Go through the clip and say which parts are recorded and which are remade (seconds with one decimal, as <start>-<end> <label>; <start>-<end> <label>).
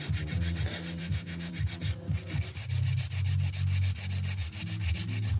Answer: 0.0-1.0 recorded; 1.0-1.5 remade; 1.5-5.4 recorded